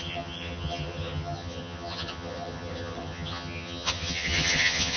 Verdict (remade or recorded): remade